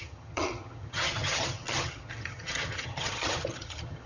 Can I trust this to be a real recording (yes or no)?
no